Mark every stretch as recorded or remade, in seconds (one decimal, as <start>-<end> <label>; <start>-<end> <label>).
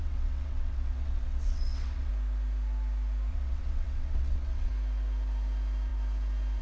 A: 0.0-2.1 remade; 2.1-3.3 recorded; 3.3-4.7 remade; 4.7-6.6 recorded